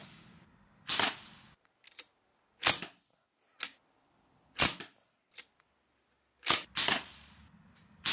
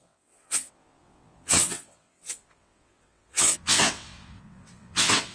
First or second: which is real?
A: first